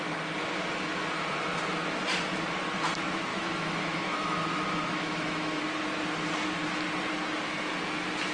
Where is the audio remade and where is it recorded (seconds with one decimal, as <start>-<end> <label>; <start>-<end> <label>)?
0.0-3.3 recorded; 3.3-5.6 remade; 5.6-8.3 recorded